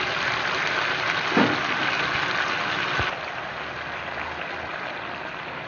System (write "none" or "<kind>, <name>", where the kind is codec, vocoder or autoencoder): none